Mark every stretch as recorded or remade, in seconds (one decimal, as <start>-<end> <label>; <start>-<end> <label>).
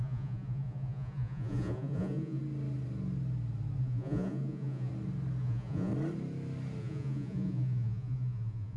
0.0-2.4 remade; 2.4-3.8 recorded; 3.8-4.9 remade; 4.9-5.4 recorded; 5.4-5.9 remade; 5.9-6.8 recorded; 6.8-8.8 remade